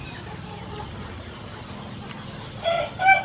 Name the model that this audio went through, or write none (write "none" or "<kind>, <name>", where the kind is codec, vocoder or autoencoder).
none